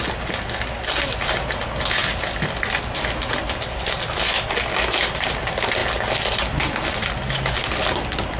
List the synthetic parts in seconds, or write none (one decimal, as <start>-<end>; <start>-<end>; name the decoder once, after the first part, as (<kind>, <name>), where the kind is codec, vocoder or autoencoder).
none